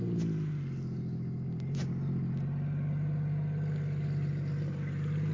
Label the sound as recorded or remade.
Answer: recorded